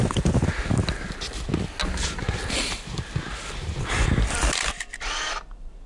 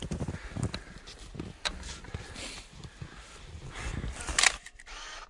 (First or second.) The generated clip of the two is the second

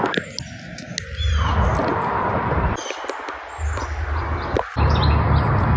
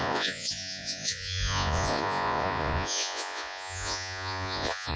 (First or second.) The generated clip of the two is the second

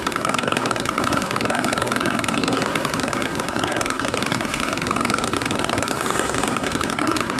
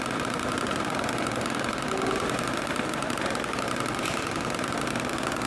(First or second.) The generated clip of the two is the first